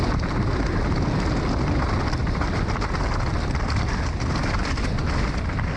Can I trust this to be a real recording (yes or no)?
yes